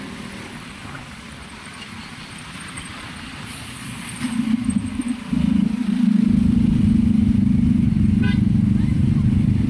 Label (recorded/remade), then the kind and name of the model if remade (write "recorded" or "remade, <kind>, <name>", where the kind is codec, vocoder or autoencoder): remade, vocoder, BigVGAN v2